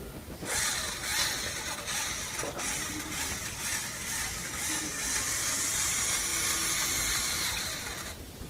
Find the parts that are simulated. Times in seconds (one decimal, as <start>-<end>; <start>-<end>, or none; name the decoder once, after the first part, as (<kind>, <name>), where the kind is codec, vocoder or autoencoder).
none